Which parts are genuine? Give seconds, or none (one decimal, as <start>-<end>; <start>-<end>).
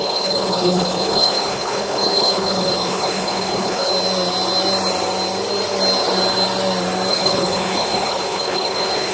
3.9-7.1